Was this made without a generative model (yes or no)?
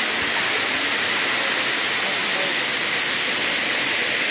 yes